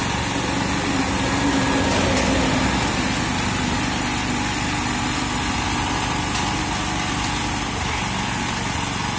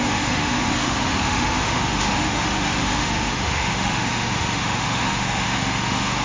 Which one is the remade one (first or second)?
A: second